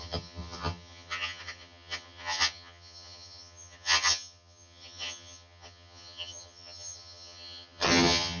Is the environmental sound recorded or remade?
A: remade